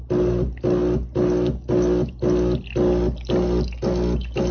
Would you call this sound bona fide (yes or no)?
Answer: yes